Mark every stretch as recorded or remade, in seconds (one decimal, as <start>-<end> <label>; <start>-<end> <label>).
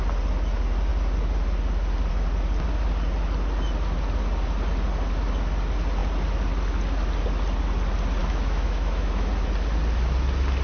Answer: 0.0-8.2 recorded; 8.2-9.3 remade; 9.3-10.6 recorded